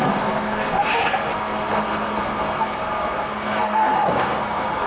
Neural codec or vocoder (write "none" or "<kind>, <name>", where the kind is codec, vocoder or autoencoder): codec, SNAC